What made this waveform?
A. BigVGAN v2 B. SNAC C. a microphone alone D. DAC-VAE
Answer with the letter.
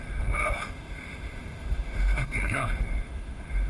D